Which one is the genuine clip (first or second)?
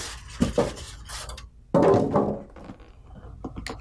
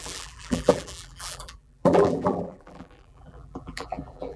first